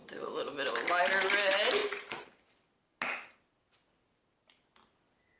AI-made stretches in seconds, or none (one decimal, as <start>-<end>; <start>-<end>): none